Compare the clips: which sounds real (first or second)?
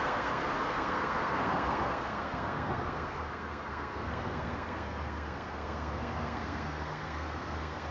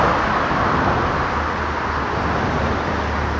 second